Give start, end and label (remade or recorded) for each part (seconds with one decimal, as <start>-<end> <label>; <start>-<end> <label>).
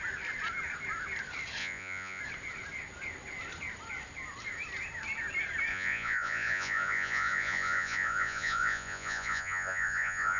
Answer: 0.0-1.6 recorded; 1.6-2.2 remade; 2.2-5.7 recorded; 5.7-10.4 remade